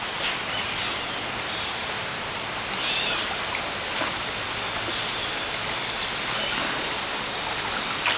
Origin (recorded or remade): recorded